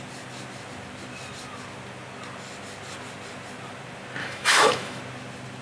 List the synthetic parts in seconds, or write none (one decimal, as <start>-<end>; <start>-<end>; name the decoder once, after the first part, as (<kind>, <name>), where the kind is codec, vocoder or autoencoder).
4.2-5.0 (autoencoder, DAC-VAE)

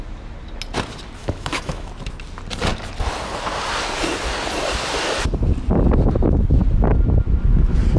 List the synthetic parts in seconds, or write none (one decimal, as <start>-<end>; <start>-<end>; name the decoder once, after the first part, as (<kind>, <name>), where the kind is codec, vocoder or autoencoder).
1.2-1.9 (autoencoder, DAC-VAE)

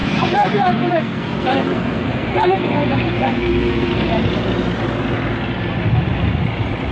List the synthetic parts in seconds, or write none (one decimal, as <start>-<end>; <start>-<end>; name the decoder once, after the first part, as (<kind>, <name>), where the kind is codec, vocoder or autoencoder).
0.0-4.1 (codec, SNAC)

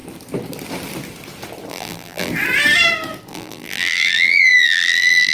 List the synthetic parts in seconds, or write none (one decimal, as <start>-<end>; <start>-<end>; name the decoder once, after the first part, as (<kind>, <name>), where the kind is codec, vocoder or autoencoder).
1.7-2.3 (vocoder, BigVGAN v2); 3.3-5.3

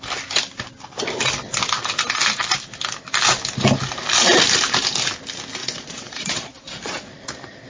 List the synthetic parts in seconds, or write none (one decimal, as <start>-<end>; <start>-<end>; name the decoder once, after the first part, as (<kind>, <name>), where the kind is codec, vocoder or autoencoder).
5.6-7.1 (vocoder, Vocos)